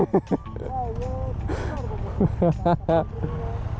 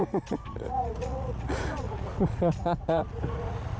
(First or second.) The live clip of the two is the first